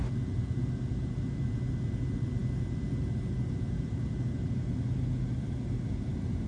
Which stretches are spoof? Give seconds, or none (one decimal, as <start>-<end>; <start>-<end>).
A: none